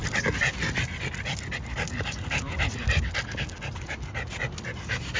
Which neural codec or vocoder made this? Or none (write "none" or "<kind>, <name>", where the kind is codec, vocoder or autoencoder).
none